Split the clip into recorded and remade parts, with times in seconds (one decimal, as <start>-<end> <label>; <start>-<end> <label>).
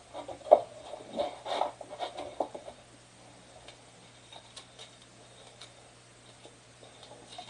0.0-2.3 recorded; 2.3-2.8 remade; 2.8-4.3 recorded; 4.3-4.9 remade; 4.9-7.5 recorded